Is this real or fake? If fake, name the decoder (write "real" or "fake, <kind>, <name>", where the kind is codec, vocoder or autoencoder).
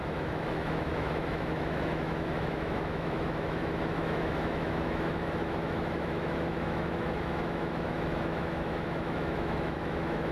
fake, autoencoder, DAC-VAE